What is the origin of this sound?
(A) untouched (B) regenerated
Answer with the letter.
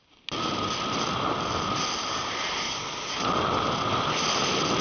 A